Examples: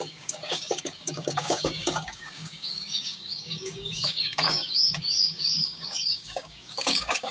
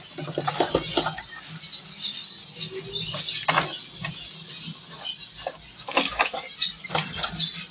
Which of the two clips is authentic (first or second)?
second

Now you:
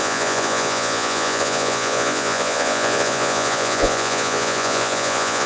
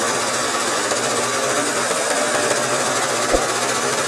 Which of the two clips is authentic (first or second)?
second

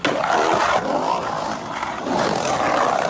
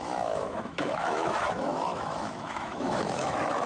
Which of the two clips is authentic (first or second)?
first